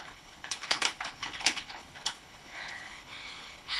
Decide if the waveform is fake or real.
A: fake